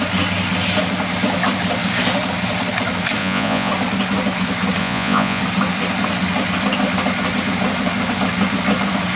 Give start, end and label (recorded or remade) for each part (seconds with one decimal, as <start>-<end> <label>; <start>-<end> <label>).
0.0-3.2 recorded; 3.2-3.7 remade; 3.7-4.8 recorded; 4.8-5.4 remade; 5.4-9.2 recorded